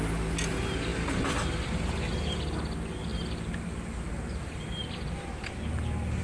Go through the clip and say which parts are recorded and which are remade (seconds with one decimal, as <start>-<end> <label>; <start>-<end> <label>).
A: 0.0-6.2 recorded